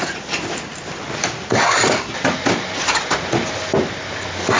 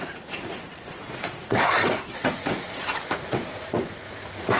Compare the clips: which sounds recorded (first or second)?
first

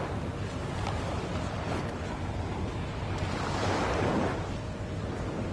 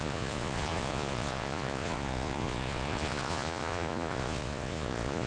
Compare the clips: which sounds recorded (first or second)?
first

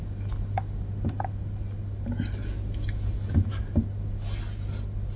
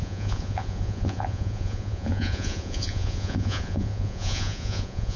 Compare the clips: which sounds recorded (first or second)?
first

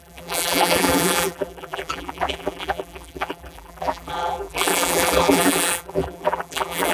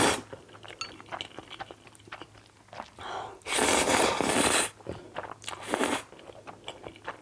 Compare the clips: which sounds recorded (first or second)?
second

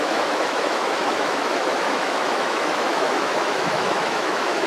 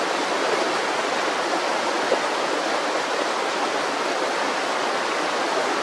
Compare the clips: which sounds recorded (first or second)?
second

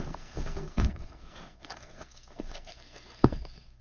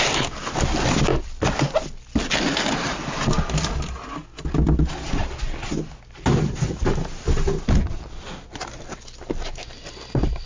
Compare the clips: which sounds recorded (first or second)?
second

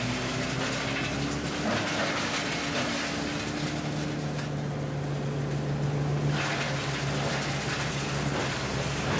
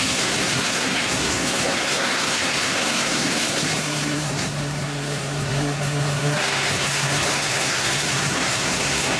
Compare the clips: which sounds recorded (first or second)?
first